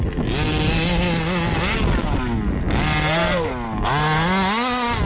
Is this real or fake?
real